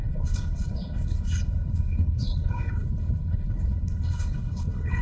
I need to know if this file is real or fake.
fake